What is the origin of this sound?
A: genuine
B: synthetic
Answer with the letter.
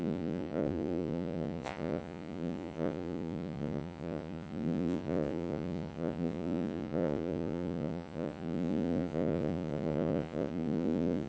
B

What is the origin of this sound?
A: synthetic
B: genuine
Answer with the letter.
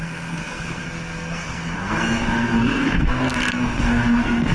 A